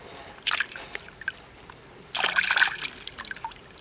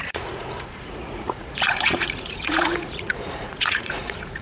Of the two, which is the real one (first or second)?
first